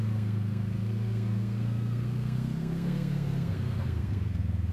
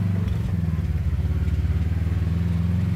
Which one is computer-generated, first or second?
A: first